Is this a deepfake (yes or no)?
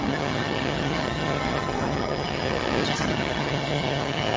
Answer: yes